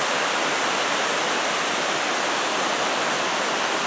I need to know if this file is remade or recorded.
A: recorded